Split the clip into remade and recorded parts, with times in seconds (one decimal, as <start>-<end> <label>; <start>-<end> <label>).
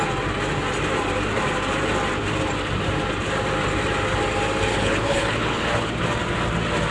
0.0-4.7 recorded; 4.7-5.9 remade; 5.9-6.9 recorded